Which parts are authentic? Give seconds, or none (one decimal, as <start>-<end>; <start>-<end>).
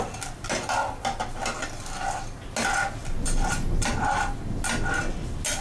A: 0.0-3.0; 3.9-5.6